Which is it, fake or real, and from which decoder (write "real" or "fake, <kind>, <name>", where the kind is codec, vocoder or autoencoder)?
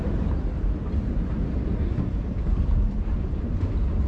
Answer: fake, vocoder, BigVGAN v2